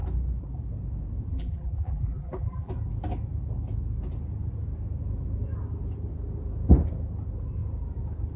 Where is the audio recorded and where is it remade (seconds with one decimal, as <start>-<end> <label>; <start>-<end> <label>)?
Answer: 0.0-1.3 recorded; 1.3-2.7 remade; 2.7-8.4 recorded